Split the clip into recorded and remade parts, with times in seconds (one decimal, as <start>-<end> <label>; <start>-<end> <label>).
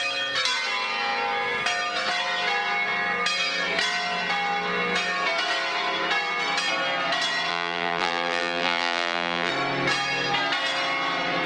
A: 0.0-7.5 recorded; 7.5-9.5 remade; 9.5-11.5 recorded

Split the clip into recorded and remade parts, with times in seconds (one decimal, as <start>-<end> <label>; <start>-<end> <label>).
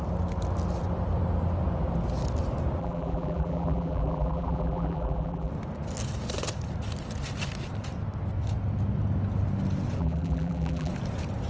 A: 0.0-2.8 recorded; 2.8-5.5 remade; 5.5-10.0 recorded; 10.0-10.9 remade; 10.9-11.5 recorded